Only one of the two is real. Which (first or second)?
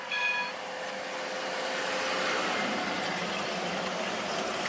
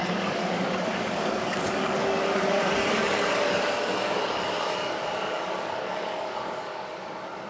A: first